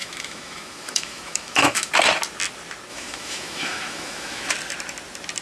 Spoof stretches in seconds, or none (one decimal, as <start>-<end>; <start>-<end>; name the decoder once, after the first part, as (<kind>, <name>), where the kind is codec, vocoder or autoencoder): 0.0-1.9 (autoencoder, DAC-VAE); 2.9-4.5